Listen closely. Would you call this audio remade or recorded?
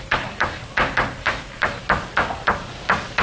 recorded